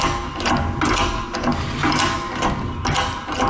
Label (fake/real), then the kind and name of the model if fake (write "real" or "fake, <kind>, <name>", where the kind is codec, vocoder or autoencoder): real